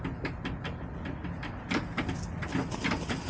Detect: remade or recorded recorded